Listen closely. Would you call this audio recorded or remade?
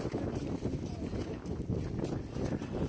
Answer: recorded